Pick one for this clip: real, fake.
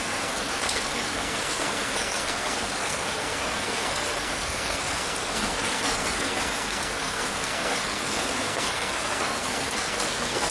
fake